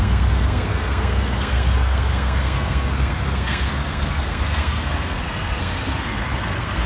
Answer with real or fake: fake